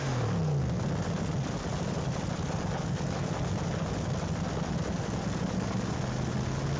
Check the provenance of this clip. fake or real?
real